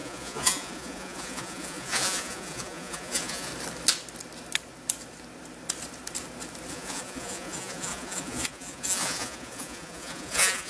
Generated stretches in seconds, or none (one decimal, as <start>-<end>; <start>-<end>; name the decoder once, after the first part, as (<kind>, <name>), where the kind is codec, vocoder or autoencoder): 0.0-3.5 (vocoder, Vocos); 6.7-10.7